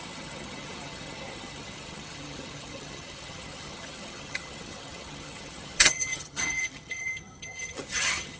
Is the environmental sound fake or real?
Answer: fake